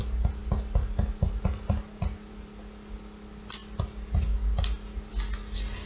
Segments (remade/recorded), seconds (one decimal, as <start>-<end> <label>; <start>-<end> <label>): 0.0-5.9 recorded